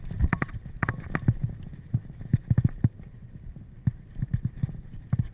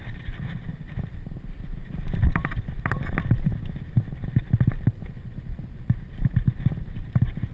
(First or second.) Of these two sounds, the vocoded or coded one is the second